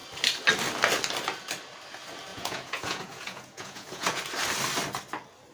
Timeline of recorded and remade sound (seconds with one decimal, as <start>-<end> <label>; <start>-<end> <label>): 0.0-2.3 recorded; 2.3-4.2 remade; 4.2-5.5 recorded